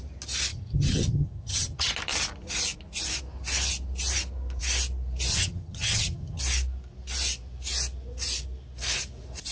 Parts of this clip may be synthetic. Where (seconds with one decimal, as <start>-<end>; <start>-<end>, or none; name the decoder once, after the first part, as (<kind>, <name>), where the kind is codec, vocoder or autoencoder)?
0.5-1.9 (vocoder, HiFi-GAN); 5.3-6.4